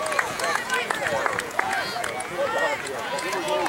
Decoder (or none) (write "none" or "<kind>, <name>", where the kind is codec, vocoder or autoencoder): vocoder, Vocos